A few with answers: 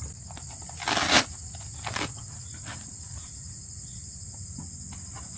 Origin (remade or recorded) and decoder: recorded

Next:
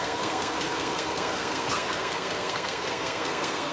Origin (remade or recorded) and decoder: remade, codec, SNAC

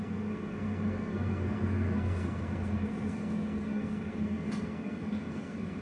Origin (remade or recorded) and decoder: remade, codec, SNAC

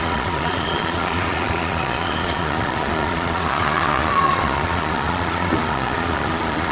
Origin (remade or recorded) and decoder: remade, vocoder, Vocos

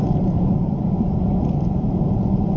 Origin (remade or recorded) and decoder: remade, vocoder, BigVGAN v2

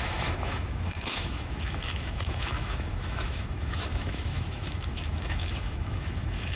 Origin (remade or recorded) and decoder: remade, autoencoder, DAC-VAE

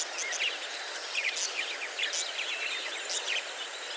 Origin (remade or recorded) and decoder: recorded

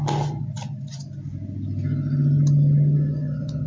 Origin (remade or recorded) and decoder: recorded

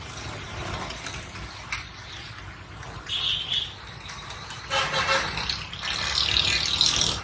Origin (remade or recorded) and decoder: recorded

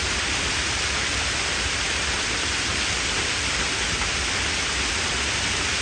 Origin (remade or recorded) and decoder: recorded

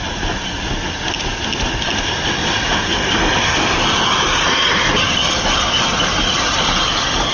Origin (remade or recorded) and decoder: recorded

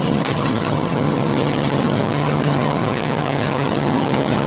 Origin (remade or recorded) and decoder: remade, vocoder, HiFi-GAN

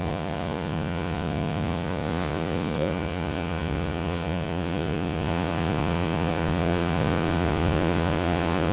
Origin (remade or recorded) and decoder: remade, vocoder, Vocos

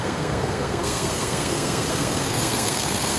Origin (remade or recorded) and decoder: remade, codec, SNAC